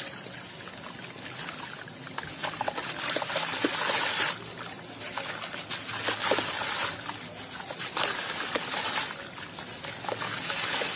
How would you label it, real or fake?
real